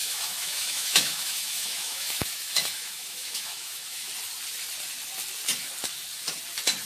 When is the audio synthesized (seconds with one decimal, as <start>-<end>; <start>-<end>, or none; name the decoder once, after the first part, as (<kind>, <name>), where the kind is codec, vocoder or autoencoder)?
0.0-4.1 (autoencoder, DAC-VAE)